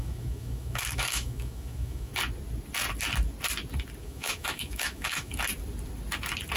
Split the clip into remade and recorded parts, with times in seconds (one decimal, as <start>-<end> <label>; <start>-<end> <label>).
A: 0.0-2.1 remade; 2.1-4.0 recorded; 4.0-5.3 remade; 5.3-6.6 recorded

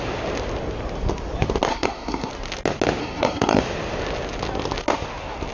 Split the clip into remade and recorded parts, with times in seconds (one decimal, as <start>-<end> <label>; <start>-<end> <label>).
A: 0.0-1.7 recorded; 1.7-2.3 remade; 2.3-3.0 recorded; 3.0-3.6 remade; 3.6-5.5 recorded

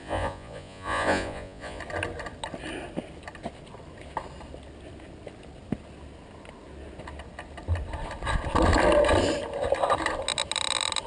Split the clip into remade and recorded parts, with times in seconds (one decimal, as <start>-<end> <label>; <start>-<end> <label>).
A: 0.0-1.8 remade; 1.8-11.1 recorded

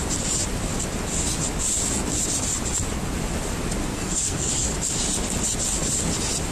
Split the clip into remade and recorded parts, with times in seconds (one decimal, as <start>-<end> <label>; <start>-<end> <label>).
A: 0.0-3.9 recorded; 3.9-4.5 remade; 4.5-6.5 recorded

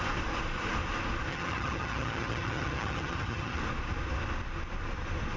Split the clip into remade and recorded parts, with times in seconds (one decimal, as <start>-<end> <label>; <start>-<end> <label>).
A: 0.0-1.3 recorded; 1.3-3.6 remade; 3.6-5.4 recorded

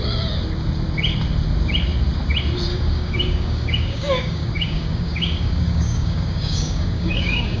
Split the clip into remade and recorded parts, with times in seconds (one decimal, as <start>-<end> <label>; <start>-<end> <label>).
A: 0.0-2.7 recorded; 2.7-7.6 remade

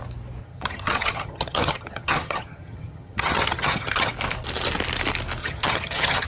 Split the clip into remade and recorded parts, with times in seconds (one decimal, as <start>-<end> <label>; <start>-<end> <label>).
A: 0.0-0.4 recorded; 0.4-4.1 remade; 4.1-5.4 recorded; 5.4-6.3 remade